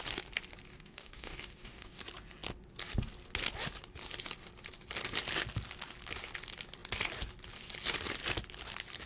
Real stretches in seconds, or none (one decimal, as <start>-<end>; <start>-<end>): 0.0-0.7; 2.0-9.1